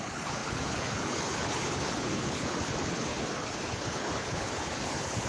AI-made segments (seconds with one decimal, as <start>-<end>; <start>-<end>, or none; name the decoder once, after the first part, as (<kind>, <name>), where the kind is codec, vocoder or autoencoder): 0.0-5.3 (codec, HILCodec)